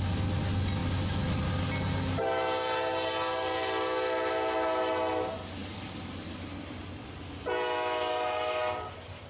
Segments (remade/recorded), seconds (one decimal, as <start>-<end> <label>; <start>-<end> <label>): 0.0-9.3 recorded